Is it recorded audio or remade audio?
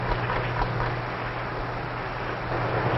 recorded